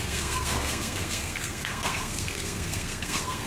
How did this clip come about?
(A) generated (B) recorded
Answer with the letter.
A